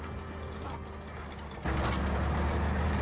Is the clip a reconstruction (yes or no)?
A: no